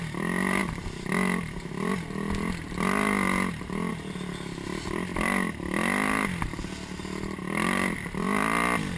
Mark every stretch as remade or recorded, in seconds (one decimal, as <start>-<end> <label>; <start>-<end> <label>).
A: 0.0-9.0 recorded